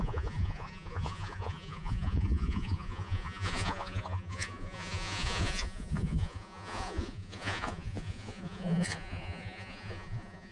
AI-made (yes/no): yes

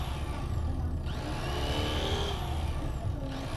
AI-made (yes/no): no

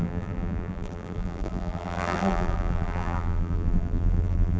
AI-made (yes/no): yes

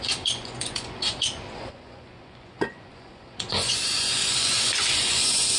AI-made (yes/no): yes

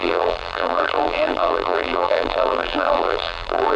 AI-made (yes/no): yes